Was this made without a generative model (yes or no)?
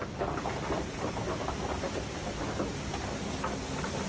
yes